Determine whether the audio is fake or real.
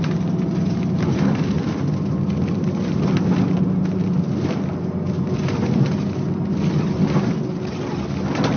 real